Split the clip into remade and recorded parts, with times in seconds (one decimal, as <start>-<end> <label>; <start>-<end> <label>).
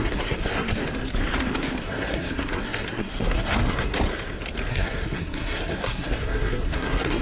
0.0-0.8 remade; 0.8-1.8 recorded; 1.8-4.0 remade; 4.0-4.7 recorded; 4.7-7.2 remade